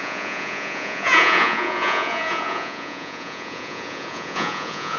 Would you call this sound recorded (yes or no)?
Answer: no